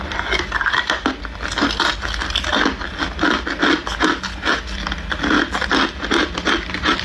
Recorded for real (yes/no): yes